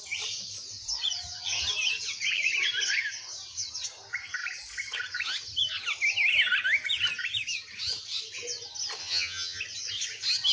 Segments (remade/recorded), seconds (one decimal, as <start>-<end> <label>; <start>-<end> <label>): 0.0-9.0 recorded; 9.0-9.6 remade; 9.6-10.5 recorded